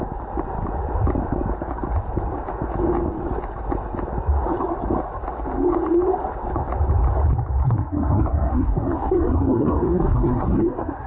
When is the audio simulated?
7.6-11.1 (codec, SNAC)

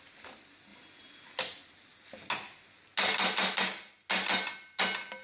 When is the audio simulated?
none

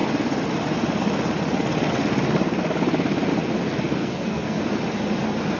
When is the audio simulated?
3.9-4.6 (codec, SNAC)

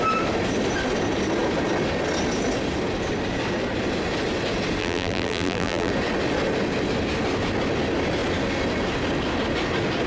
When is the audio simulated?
4.8-5.9 (vocoder, BigVGAN v2)

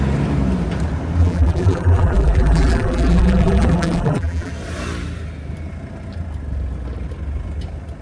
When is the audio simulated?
1.2-4.5 (vocoder, BigVGAN v2)

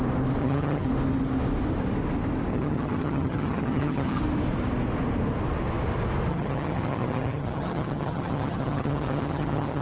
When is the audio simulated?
0.4-0.9 (vocoder, HiFi-GAN); 2.5-4.2; 6.3-9.8